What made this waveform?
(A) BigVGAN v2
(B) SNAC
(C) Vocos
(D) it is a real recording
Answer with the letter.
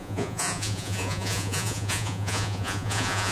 C